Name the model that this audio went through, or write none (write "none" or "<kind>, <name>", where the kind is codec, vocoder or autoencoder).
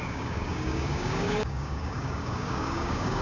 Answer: codec, DAC